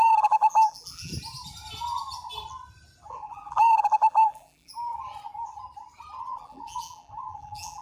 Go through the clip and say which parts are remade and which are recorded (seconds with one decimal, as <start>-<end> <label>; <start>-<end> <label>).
0.0-1.1 remade; 1.1-3.1 recorded; 3.1-4.7 remade; 4.7-6.2 recorded; 6.2-7.8 remade